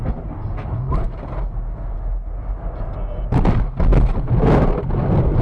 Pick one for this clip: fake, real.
real